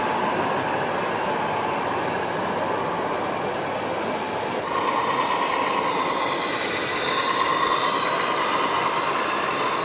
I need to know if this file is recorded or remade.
recorded